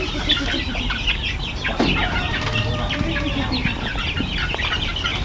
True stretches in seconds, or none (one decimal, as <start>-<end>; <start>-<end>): 0.0-5.2